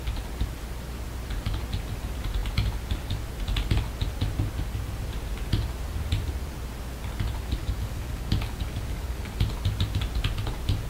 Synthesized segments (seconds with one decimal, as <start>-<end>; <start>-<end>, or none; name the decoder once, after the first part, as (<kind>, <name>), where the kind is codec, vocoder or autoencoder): 7.6-9.3 (codec, DAC)